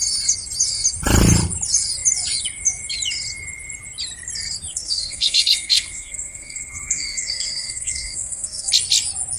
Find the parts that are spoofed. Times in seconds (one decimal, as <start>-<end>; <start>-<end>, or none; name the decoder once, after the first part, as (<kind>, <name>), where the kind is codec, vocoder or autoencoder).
4.7-8.7 (codec, SNAC)